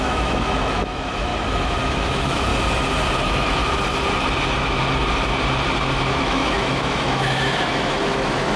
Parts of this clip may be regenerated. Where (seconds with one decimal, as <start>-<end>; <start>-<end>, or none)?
0.0-1.3; 1.9-2.5; 3.2-3.6; 6.2-8.6